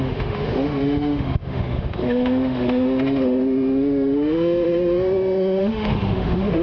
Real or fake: fake